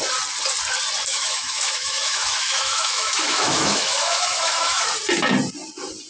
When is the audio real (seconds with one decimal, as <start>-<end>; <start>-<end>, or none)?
0.0-1.1; 4.8-6.1